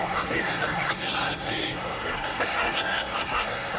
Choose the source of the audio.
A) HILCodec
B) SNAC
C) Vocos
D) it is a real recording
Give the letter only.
B